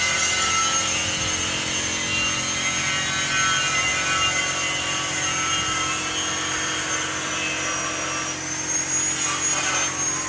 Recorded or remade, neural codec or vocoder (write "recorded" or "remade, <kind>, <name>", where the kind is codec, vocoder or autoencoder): recorded